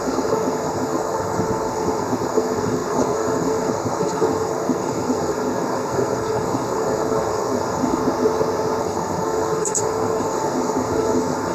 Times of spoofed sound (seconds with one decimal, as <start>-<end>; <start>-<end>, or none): 0.0-8.0; 8.8-11.5

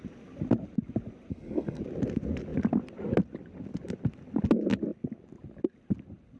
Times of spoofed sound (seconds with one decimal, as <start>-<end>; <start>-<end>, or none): 1.3-1.8

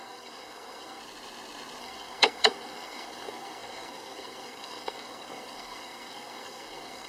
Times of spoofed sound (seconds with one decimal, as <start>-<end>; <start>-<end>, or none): 0.0-1.0; 1.8-7.1

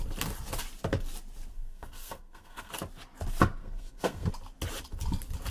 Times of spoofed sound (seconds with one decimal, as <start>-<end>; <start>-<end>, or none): 1.5-2.7; 3.6-4.3

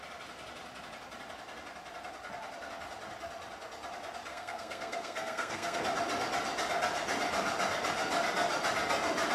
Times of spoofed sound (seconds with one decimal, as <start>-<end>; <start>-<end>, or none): 4.3-5.8

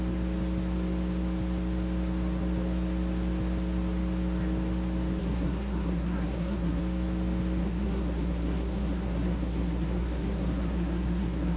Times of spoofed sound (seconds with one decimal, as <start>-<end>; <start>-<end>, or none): 5.2-6.8; 7.6-11.6

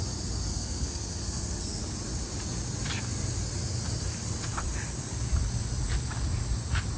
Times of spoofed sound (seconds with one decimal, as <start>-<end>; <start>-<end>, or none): 0.5-1.8